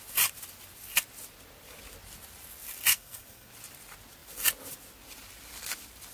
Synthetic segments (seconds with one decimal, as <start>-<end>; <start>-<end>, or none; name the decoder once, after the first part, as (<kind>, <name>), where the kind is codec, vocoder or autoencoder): 2.9-3.5 (codec, SNAC)